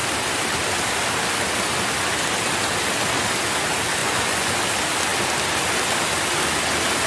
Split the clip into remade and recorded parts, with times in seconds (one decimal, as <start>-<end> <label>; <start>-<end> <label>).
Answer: 0.0-4.0 recorded; 4.0-4.5 remade; 4.5-7.1 recorded